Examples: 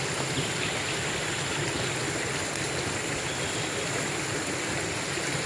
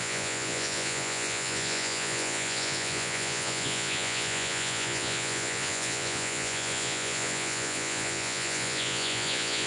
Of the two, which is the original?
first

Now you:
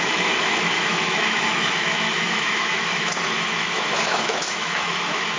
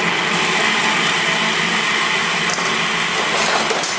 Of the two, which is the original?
second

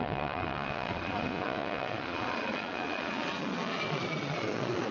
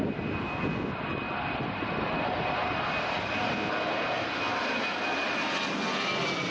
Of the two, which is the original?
second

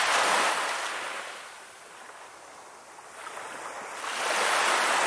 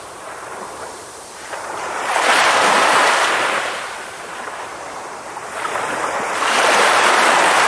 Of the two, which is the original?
first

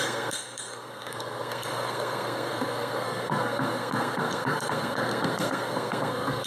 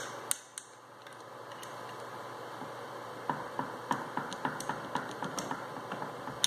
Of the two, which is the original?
second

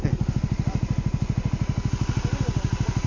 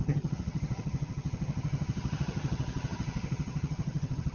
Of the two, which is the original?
first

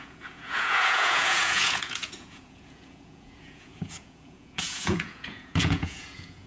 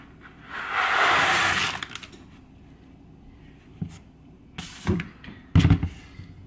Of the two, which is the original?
second